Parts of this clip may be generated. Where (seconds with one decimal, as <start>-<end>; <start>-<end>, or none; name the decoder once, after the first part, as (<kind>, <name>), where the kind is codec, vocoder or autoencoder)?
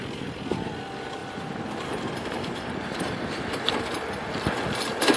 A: 1.2-3.7 (vocoder, BigVGAN v2)